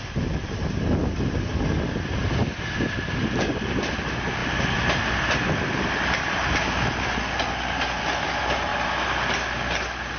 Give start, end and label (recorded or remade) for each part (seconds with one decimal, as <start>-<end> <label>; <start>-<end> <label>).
0.0-10.2 recorded

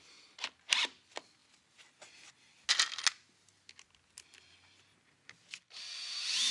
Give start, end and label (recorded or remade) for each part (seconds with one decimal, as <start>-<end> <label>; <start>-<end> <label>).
0.0-6.5 recorded

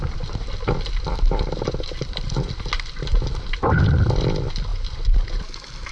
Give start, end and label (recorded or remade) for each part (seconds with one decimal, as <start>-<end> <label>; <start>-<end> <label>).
0.0-5.9 remade